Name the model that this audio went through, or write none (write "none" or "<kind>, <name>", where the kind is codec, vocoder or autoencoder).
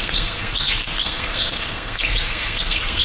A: codec, SNAC